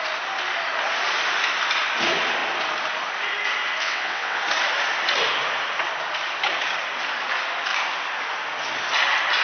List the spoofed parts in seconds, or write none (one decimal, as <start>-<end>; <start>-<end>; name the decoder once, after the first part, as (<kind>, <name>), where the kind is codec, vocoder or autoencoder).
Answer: 3.8-4.4 (vocoder, WaveNeXt)